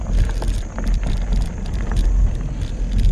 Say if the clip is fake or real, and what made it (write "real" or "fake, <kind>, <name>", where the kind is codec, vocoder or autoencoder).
real